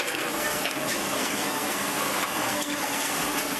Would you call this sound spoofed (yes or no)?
yes